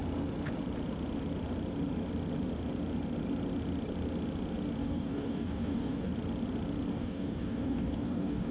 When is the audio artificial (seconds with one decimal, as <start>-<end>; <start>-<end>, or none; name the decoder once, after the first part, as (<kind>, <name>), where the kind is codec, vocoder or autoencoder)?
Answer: 4.8-6.1 (codec, DAC); 6.9-8.5